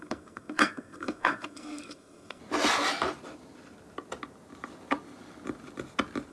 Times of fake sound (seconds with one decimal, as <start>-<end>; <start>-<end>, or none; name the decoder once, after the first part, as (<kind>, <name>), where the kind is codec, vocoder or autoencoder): 0.0-2.4 (codec, SNAC)